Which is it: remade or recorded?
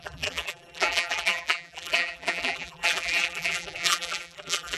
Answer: remade